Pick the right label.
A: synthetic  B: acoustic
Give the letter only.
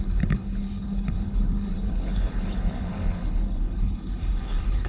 A